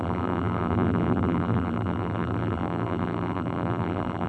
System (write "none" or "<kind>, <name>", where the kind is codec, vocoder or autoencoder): vocoder, BigVGAN v2